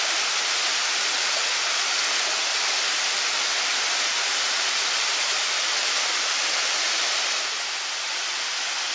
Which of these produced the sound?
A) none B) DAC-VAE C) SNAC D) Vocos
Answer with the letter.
A